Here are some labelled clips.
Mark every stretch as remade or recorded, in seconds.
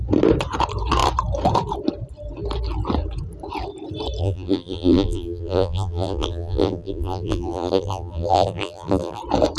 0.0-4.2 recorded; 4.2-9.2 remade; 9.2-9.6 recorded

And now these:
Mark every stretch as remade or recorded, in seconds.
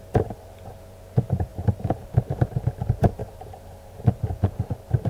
0.0-5.1 remade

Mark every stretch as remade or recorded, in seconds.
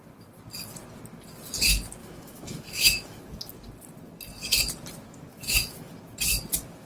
0.0-2.0 recorded; 2.0-3.2 remade; 3.2-5.3 recorded; 5.3-5.9 remade; 5.9-6.9 recorded